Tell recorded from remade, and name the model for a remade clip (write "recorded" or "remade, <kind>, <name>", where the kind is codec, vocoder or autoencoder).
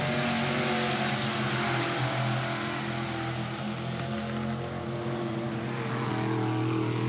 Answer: recorded